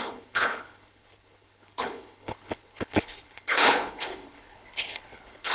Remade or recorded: remade